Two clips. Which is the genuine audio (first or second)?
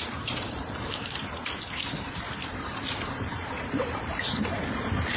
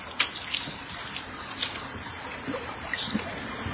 second